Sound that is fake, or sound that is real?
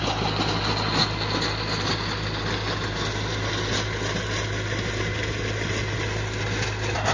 real